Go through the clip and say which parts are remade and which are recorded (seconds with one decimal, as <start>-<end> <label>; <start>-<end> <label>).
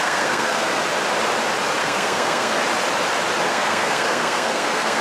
0.0-0.8 remade; 0.8-1.8 recorded; 1.8-2.6 remade; 2.6-3.5 recorded; 3.5-5.0 remade